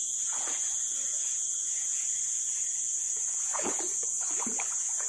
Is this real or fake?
fake